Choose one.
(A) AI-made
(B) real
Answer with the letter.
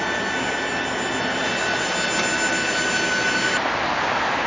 B